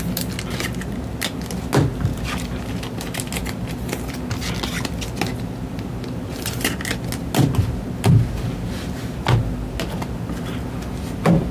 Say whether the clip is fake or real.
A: real